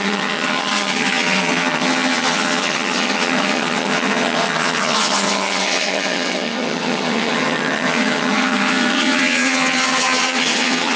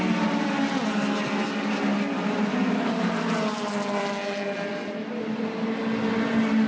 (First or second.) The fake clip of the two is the first